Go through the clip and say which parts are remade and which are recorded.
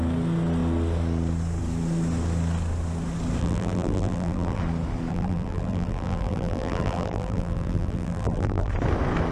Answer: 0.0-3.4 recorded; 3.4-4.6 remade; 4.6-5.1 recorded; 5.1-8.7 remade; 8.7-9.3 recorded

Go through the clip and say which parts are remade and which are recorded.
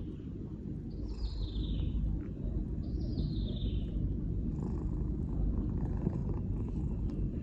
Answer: 0.0-6.2 remade; 6.2-7.0 recorded; 7.0-7.4 remade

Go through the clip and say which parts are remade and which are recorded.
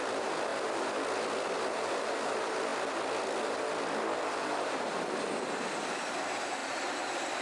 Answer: 0.0-7.4 recorded